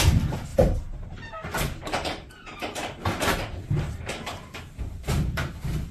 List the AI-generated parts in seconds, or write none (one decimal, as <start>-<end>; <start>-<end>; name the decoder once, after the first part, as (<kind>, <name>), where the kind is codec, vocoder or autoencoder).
0.5-4.0 (vocoder, BigVGAN v2)

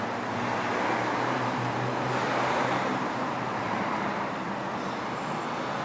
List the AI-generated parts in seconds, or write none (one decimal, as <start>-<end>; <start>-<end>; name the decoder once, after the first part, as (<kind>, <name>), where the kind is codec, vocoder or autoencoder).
1.0-4.5 (vocoder, BigVGAN v2)

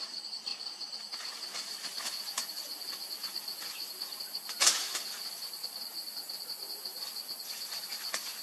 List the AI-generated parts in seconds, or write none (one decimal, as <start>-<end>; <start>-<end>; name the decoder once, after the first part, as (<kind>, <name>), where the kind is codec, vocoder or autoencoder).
none

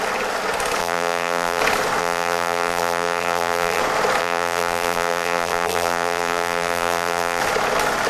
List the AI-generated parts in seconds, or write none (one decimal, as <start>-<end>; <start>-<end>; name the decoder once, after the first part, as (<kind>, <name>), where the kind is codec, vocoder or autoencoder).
0.8-1.6 (vocoder, BigVGAN v2); 2.0-3.8; 4.2-7.4